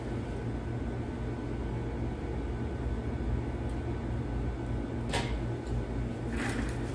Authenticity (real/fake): real